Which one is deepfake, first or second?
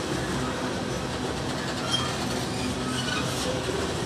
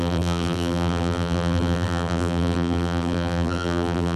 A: second